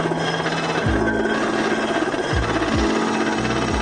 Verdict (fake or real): real